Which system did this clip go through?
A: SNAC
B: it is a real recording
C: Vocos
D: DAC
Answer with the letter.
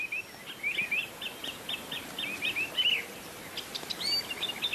B